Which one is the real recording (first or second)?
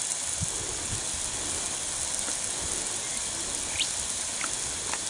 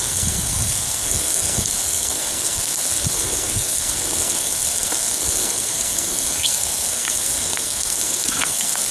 first